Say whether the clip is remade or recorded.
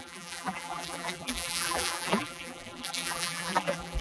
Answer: remade